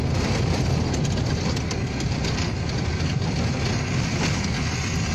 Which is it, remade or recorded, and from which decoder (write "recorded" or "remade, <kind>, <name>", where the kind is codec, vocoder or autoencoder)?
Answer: recorded